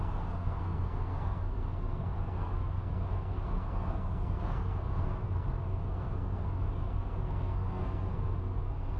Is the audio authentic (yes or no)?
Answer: no